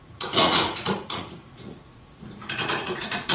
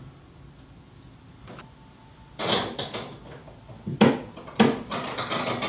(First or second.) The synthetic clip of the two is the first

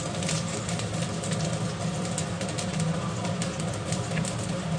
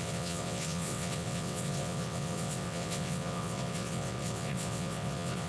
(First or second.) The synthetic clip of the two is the second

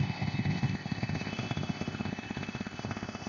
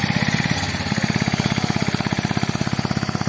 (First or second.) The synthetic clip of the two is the first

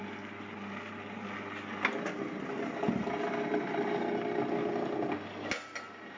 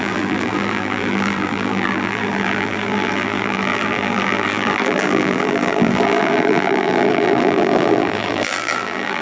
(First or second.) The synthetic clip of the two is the second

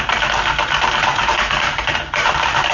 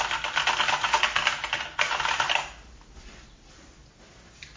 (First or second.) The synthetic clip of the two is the first